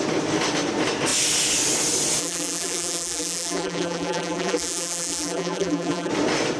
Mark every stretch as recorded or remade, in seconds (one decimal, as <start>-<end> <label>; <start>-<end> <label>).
0.0-2.2 recorded; 2.2-6.1 remade; 6.1-6.6 recorded